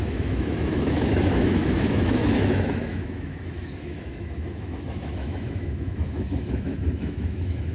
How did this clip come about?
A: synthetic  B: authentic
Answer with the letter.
A